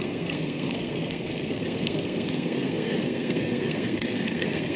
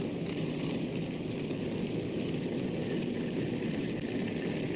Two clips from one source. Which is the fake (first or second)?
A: first